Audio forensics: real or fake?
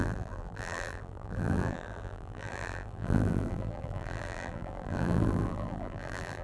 fake